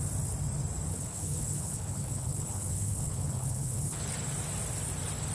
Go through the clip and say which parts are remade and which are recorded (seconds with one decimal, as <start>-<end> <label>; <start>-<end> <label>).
0.0-0.9 recorded; 0.9-4.0 remade; 4.0-5.3 recorded